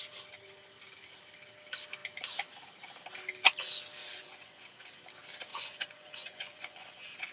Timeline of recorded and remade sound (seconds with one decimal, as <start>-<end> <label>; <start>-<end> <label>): 0.0-4.0 recorded; 4.0-4.9 remade; 4.9-5.5 recorded; 5.5-7.3 remade